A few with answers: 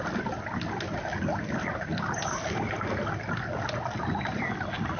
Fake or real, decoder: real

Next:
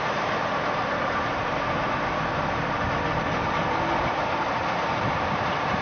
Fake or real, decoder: fake, vocoder, BigVGAN v2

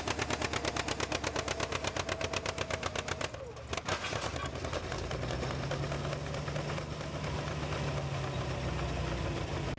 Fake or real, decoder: real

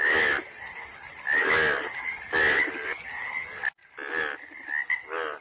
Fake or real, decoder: real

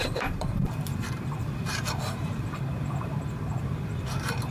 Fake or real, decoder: fake, vocoder, BigVGAN v2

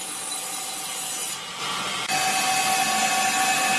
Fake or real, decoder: real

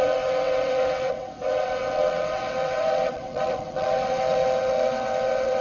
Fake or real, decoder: fake, vocoder, WaveNeXt